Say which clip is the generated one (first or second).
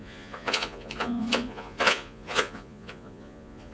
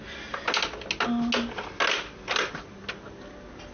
first